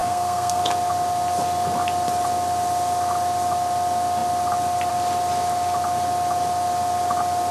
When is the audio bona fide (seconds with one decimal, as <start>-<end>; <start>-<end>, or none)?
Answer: 0.6-7.5